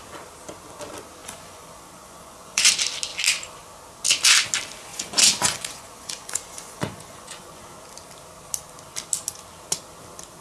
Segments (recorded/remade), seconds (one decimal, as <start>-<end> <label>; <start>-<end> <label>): 0.0-1.2 recorded; 1.2-2.7 remade; 2.7-4.9 recorded; 4.9-7.6 remade; 7.6-10.4 recorded